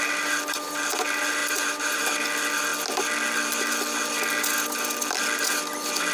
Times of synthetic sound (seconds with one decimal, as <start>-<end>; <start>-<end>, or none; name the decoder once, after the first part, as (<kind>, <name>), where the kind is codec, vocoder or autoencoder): 1.4-2.0 (vocoder, BigVGAN v2)